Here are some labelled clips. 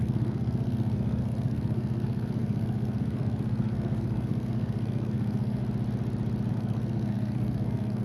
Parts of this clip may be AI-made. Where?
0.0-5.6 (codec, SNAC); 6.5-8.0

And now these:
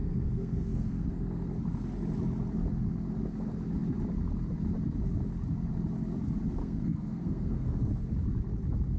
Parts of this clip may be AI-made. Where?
0.0-1.5 (codec, SNAC); 6.6-7.9

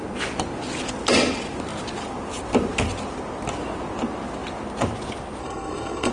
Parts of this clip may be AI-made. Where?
5.4-6.1 (codec, SNAC)

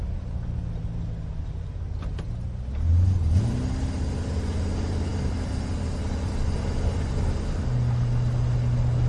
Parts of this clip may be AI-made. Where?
none

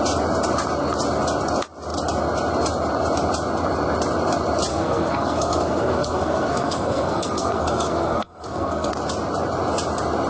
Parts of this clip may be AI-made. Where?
4.7-8.9 (codec, SNAC)

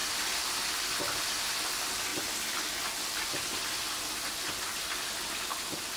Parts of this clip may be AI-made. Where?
none